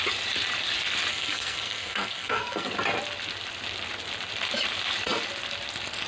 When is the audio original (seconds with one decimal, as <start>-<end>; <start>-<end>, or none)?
0.0-1.1; 2.7-6.1